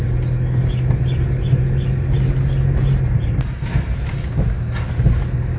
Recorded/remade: recorded